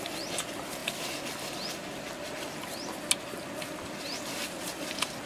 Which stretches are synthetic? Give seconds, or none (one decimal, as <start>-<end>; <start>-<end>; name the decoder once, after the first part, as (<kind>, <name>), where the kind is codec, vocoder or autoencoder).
4.4-5.3 (vocoder, BigVGAN v2)